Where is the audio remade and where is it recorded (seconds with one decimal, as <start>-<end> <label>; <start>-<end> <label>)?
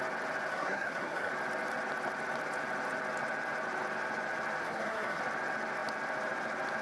0.0-0.5 recorded; 0.5-1.3 remade; 1.3-4.6 recorded; 4.6-5.2 remade; 5.2-6.8 recorded